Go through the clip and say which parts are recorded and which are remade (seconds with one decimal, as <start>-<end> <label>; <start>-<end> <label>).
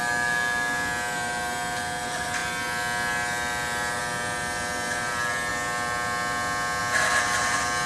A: 0.0-7.9 recorded